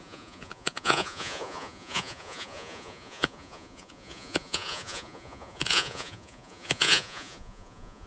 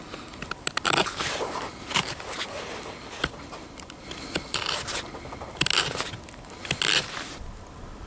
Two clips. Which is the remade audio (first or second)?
first